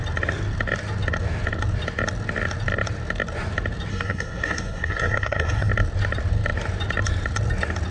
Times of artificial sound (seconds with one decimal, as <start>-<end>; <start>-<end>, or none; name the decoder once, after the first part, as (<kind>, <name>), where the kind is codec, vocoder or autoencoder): 3.9-5.7 (codec, SNAC)